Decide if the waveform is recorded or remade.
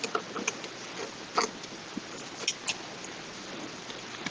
recorded